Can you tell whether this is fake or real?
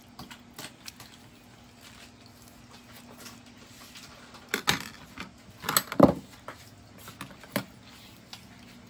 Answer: real